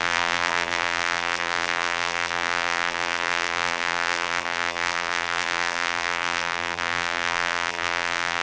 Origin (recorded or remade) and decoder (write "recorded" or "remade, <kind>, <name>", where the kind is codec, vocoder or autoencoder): remade, vocoder, BigVGAN v2